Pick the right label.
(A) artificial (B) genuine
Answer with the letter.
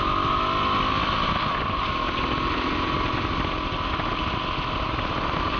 B